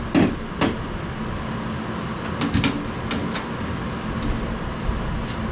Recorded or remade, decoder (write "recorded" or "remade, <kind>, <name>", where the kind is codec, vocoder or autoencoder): recorded